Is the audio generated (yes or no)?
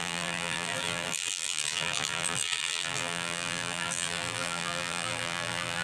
yes